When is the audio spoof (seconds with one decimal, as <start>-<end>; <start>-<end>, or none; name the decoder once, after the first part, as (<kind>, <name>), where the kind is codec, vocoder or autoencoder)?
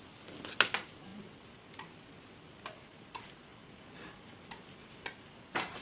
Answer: none